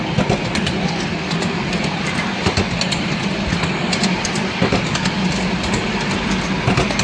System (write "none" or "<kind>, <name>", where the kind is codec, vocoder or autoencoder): none